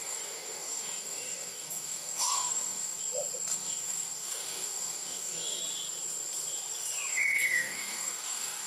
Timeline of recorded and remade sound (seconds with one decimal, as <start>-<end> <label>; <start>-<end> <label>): 0.0-3.0 remade; 3.0-3.5 recorded; 3.5-5.6 remade; 5.6-7.1 recorded; 7.1-8.7 remade